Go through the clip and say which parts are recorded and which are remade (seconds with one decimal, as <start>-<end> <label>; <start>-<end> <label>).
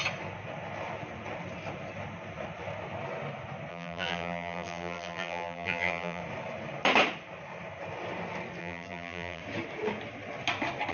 0.0-3.7 recorded; 3.7-6.2 remade; 6.2-8.6 recorded; 8.6-9.4 remade; 9.4-10.9 recorded